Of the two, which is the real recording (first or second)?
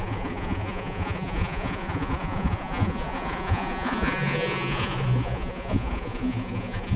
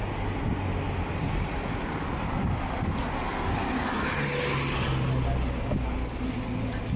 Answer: second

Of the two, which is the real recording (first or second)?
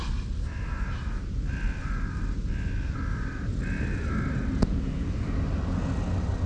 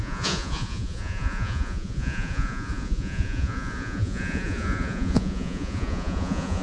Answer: first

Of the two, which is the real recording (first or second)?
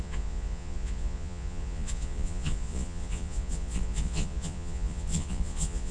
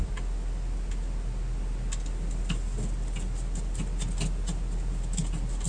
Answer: second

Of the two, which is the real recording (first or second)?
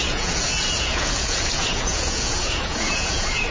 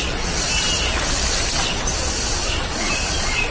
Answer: second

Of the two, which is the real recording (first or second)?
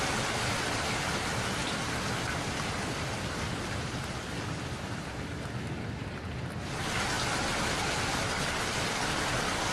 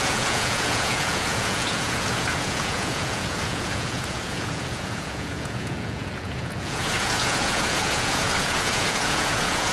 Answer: first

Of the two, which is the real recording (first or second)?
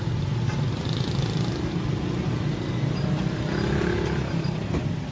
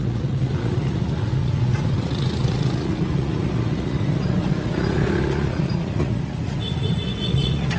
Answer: first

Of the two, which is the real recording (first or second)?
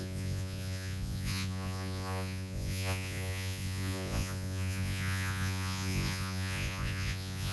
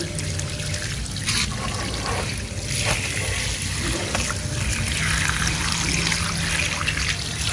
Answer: second